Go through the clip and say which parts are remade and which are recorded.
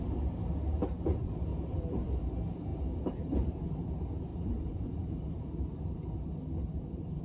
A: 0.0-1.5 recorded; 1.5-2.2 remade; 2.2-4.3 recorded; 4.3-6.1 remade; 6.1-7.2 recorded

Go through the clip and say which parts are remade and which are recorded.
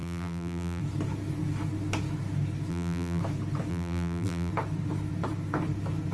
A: 0.0-0.8 remade; 0.8-2.7 recorded; 2.7-3.2 remade; 3.2-3.7 recorded; 3.7-4.5 remade; 4.5-6.1 recorded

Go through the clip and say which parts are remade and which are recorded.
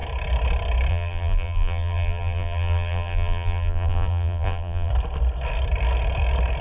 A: 0.0-0.9 recorded; 0.9-4.9 remade; 4.9-6.6 recorded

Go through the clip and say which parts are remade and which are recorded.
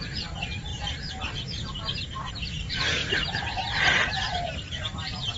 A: 0.0-0.7 remade; 0.7-2.3 recorded; 2.3-5.4 remade